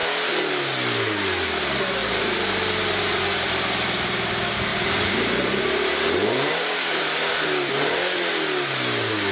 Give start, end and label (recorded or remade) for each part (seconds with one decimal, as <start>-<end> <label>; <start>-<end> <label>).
0.0-2.0 recorded; 2.0-4.3 remade; 4.3-4.7 recorded; 4.7-7.5 remade; 7.5-9.3 recorded